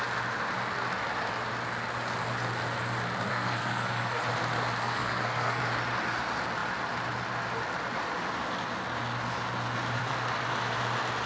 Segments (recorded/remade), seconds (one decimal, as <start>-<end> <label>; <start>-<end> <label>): 0.0-3.3 recorded; 3.3-4.2 remade; 4.2-4.8 recorded; 4.8-5.6 remade; 5.6-11.3 recorded